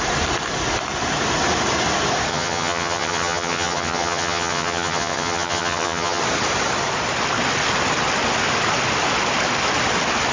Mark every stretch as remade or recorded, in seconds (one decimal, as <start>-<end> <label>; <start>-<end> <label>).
0.0-2.3 recorded; 2.3-6.2 remade; 6.2-10.3 recorded